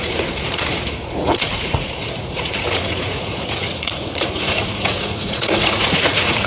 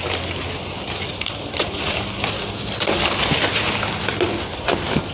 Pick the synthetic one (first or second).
first